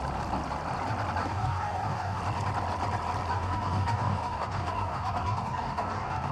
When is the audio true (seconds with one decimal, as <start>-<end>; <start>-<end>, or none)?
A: 0.0-1.2; 2.2-3.3